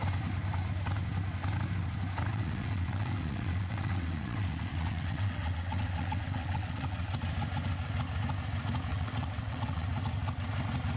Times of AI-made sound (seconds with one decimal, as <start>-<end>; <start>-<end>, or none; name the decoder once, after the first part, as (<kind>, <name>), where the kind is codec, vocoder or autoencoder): 2.3-7.1 (vocoder, WaveNeXt); 8.9-9.9

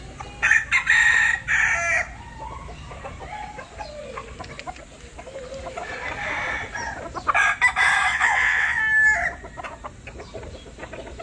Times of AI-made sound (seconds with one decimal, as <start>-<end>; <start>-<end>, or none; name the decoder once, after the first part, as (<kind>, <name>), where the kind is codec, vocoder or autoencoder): 8.1-8.8 (vocoder, WaveNeXt)

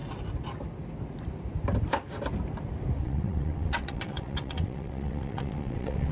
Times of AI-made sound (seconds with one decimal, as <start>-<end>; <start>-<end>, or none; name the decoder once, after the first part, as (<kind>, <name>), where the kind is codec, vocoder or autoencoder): 3.0-6.1 (vocoder, WaveNeXt)

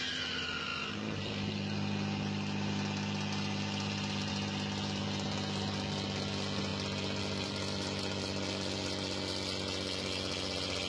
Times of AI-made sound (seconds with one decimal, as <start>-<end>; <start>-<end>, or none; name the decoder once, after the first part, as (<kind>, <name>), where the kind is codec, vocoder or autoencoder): none